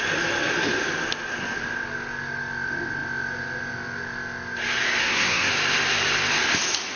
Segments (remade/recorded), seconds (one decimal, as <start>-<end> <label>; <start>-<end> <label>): 0.0-5.0 recorded; 5.0-5.5 remade; 5.5-7.0 recorded